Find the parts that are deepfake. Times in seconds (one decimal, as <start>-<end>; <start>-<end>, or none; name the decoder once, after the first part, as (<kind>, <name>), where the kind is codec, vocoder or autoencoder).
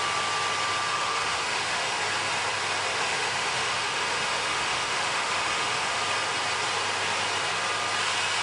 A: 0.9-2.0 (autoencoder, DAC-VAE); 2.9-6.0